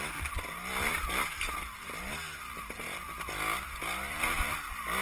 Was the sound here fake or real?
real